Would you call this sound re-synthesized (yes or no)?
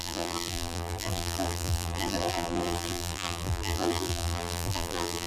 yes